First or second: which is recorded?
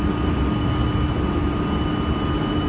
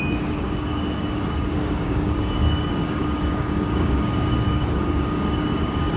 first